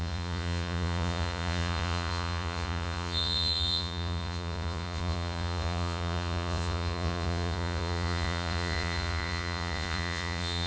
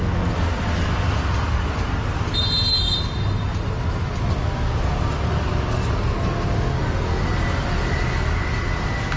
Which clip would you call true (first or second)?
second